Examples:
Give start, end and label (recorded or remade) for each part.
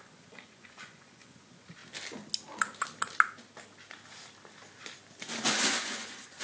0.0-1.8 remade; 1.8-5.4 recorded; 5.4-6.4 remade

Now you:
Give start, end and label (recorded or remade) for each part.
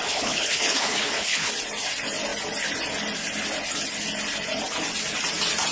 0.0-1.5 remade; 1.5-5.7 recorded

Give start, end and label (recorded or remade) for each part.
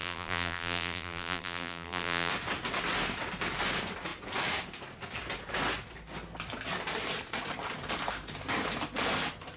0.0-2.3 remade; 2.3-9.6 recorded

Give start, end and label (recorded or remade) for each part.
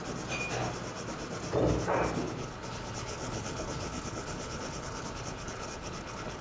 0.0-2.4 recorded; 2.4-6.4 remade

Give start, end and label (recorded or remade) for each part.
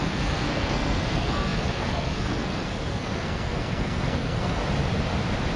0.0-4.6 remade; 4.6-5.6 recorded